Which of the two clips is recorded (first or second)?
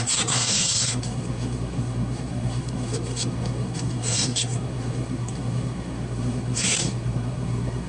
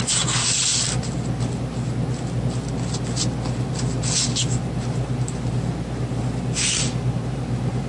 second